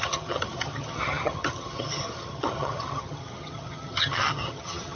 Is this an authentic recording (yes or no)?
no